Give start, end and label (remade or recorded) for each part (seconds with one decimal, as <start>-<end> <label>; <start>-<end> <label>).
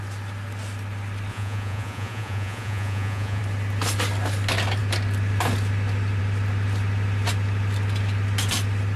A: 0.0-1.3 recorded; 1.3-3.4 remade; 3.4-9.0 recorded